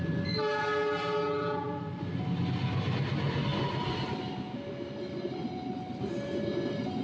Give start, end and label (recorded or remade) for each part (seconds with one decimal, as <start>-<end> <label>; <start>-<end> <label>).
0.0-7.0 recorded